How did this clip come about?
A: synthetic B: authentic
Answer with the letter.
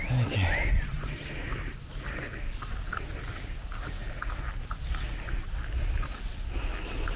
B